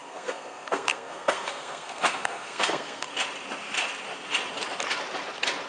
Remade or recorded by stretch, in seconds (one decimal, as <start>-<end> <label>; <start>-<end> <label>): 0.0-3.1 remade; 3.1-5.7 recorded